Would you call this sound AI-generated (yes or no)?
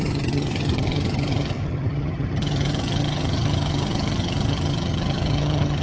yes